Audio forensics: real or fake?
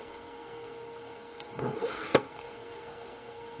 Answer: fake